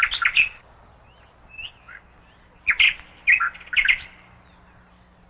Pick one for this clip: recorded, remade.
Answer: recorded